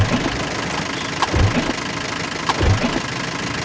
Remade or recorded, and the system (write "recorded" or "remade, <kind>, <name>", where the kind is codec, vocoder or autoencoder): recorded